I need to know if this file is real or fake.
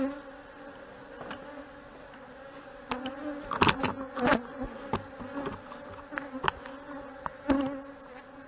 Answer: real